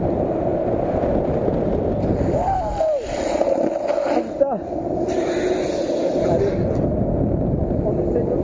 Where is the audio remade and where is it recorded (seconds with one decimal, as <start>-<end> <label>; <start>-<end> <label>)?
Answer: 0.0-8.4 recorded